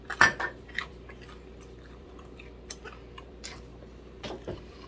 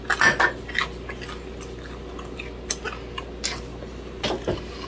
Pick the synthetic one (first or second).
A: first